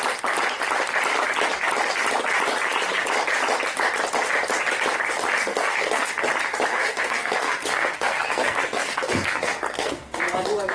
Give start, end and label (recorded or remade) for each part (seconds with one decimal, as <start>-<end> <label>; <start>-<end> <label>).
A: 0.0-5.5 recorded; 5.5-6.1 remade; 6.1-6.7 recorded; 6.7-10.2 remade; 10.2-10.7 recorded